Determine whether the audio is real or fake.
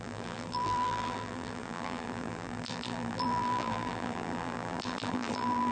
fake